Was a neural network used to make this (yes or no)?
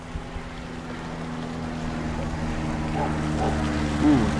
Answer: no